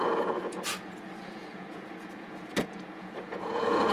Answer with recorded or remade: remade